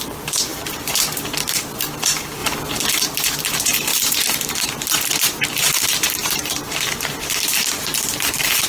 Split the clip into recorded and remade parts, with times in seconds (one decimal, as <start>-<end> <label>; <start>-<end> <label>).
0.0-0.5 recorded; 0.5-1.3 remade; 1.3-3.9 recorded; 3.9-8.7 remade